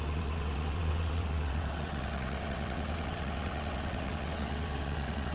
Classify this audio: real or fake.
fake